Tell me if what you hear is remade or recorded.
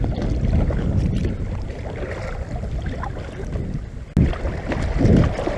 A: recorded